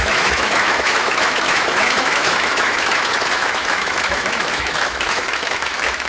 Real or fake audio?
fake